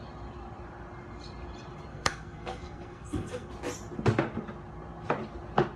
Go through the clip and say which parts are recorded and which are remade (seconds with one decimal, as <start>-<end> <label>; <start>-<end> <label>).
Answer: 0.0-1.9 recorded; 1.9-3.5 remade; 3.5-5.8 recorded